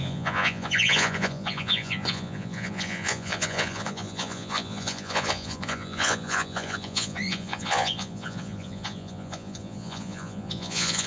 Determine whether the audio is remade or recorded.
remade